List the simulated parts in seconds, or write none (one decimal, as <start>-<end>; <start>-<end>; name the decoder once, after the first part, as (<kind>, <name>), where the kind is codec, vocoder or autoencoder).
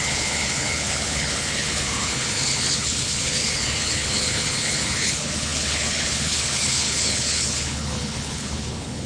0.0-9.1 (codec, HILCodec)